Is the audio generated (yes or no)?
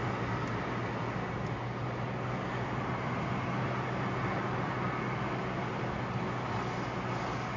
no